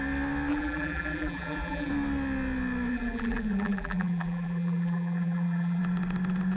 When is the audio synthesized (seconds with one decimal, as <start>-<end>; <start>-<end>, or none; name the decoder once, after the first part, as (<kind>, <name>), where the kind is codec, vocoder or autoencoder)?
0.5-1.9 (vocoder, BigVGAN v2); 2.9-5.8